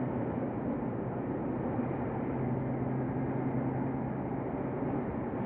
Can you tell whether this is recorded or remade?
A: recorded